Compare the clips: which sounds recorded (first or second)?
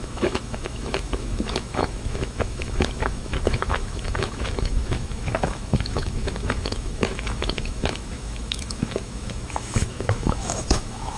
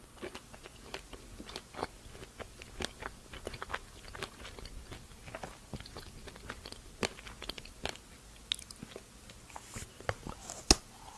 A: second